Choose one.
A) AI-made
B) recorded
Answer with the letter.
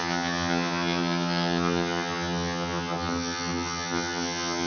A